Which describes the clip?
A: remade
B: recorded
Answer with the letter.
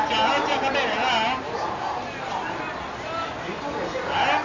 B